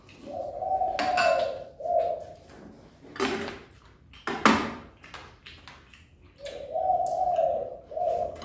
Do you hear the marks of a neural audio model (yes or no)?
no